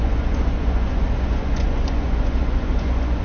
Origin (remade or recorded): remade